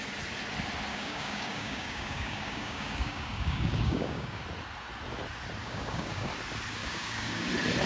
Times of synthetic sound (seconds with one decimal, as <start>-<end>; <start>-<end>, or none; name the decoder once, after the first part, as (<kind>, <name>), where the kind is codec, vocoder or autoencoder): 0.9-4.4 (codec, DAC); 5.6-6.3; 6.8-7.5